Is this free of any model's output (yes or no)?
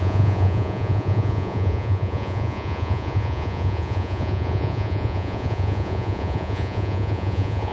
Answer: no